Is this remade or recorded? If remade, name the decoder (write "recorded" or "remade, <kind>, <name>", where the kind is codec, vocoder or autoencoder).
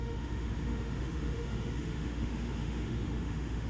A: remade, autoencoder, DAC-VAE